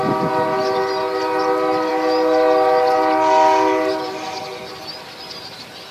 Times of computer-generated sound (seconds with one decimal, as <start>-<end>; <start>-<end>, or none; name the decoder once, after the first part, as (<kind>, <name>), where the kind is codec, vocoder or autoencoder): none